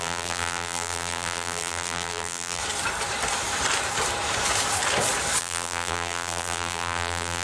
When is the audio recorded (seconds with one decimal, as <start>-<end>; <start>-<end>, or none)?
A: 2.6-5.4